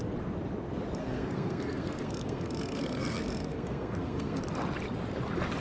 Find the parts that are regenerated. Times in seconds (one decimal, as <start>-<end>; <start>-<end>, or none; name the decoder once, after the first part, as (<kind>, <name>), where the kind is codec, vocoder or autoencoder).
1.0-4.4 (codec, SNAC)